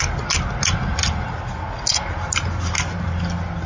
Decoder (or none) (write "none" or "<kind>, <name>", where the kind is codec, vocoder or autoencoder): none